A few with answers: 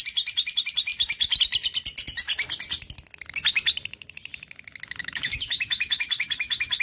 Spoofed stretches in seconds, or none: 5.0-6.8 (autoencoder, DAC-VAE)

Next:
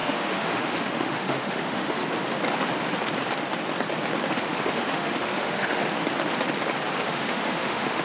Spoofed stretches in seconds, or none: 0.0-2.0 (autoencoder, DAC-VAE); 4.3-5.8; 7.0-8.0

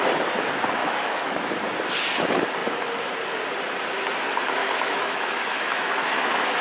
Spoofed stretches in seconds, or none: 0.8-1.6 (autoencoder, DAC-VAE); 4.6-6.6